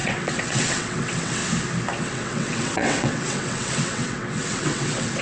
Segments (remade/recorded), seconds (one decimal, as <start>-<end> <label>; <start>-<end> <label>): 0.0-1.4 remade; 1.4-2.0 recorded; 2.0-5.2 remade